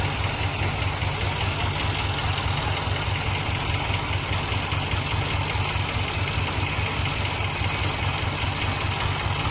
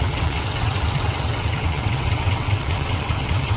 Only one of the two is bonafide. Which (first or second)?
first